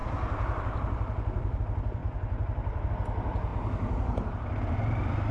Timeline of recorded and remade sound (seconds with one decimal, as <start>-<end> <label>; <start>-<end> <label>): 0.0-1.6 remade; 1.6-2.0 recorded; 2.0-2.9 remade; 2.9-5.3 recorded